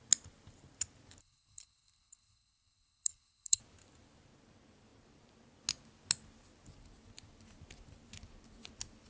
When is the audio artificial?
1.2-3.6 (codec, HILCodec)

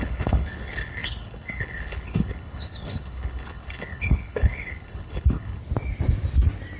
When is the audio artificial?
0.0-5.6 (codec, HILCodec)

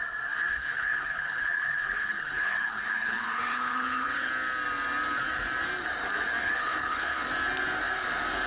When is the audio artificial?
0.5-4.3 (codec, HILCodec); 6.4-7.2

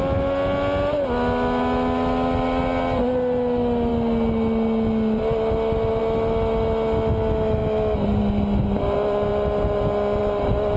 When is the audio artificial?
none

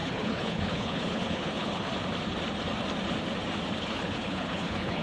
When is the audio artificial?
0.0-1.9 (codec, HILCodec); 3.8-5.0

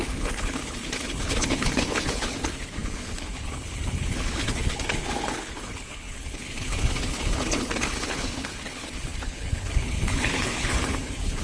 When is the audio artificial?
0.0-11.4 (codec, HILCodec)

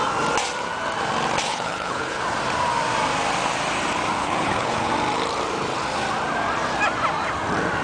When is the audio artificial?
1.5-2.2 (codec, HILCodec); 4.2-4.9